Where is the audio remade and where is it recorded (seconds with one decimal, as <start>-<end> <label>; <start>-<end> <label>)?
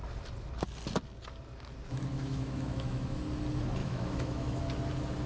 0.0-2.1 recorded; 2.1-3.2 remade; 3.2-3.8 recorded; 3.8-4.6 remade; 4.6-5.3 recorded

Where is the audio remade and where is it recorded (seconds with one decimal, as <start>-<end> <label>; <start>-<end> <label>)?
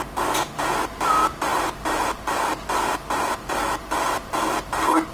0.0-5.1 recorded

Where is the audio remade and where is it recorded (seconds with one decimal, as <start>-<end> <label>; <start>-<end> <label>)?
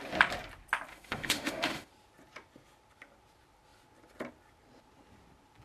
0.0-0.9 recorded; 0.9-1.9 remade; 1.9-5.6 recorded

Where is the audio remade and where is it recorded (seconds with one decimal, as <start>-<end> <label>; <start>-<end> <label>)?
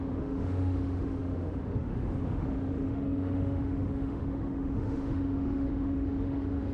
0.0-6.7 remade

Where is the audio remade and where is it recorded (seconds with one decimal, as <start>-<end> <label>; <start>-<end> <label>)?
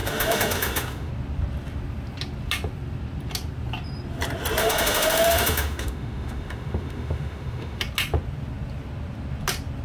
0.0-1.1 remade; 1.1-4.6 recorded; 4.6-7.8 remade; 7.8-9.8 recorded